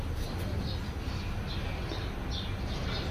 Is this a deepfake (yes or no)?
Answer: no